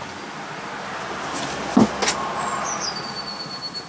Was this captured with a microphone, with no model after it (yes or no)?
yes